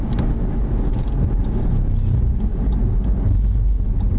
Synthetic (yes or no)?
no